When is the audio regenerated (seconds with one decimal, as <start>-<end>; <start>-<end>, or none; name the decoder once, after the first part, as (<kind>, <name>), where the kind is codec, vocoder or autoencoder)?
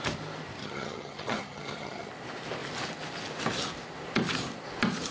0.6-2.1 (vocoder, HiFi-GAN)